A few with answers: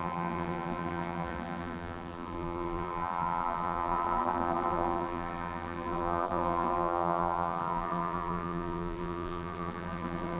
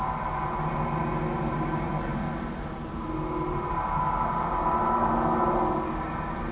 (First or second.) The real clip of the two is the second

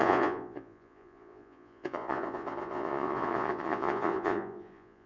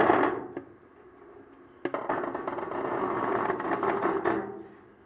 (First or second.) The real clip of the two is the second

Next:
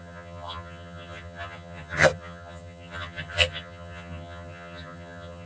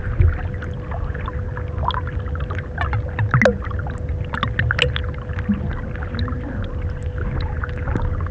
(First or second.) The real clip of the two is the second